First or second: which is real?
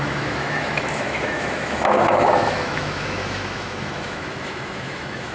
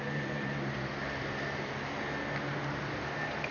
second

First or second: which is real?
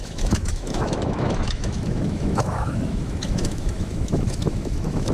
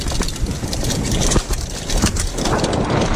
second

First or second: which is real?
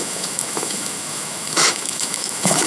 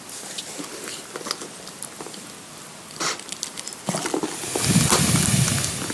second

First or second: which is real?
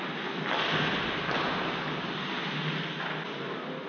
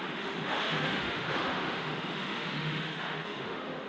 first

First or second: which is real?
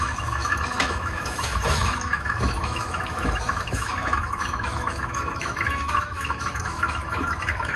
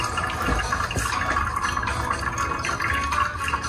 second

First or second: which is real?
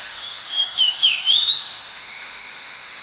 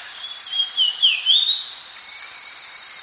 second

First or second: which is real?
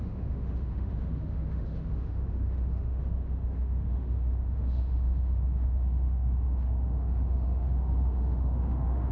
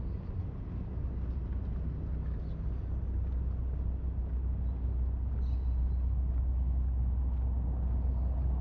second